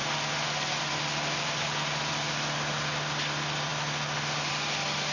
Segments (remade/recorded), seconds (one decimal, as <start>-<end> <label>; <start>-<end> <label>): 0.0-5.1 recorded